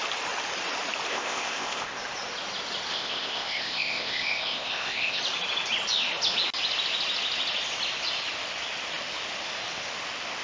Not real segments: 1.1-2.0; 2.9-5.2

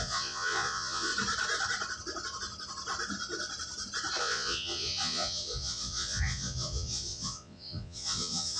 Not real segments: 0.0-1.1; 4.2-8.6